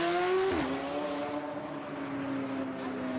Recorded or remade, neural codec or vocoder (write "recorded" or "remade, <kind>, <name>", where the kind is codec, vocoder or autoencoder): recorded